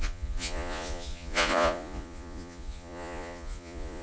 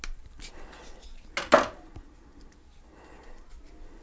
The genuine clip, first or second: second